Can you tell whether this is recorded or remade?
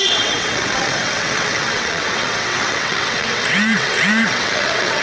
remade